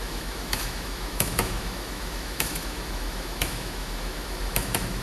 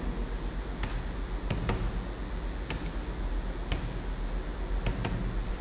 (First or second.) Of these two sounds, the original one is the second